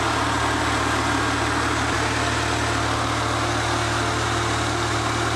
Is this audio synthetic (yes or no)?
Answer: no